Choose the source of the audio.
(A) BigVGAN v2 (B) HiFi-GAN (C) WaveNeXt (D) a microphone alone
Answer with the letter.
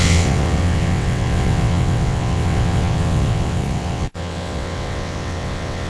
C